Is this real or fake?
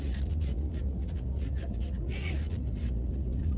fake